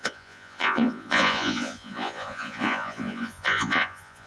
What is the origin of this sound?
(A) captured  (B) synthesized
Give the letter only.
B